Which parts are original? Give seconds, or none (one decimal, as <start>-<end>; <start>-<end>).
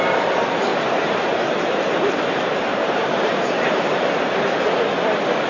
0.0-0.7; 3.8-5.5